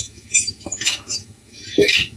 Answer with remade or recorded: remade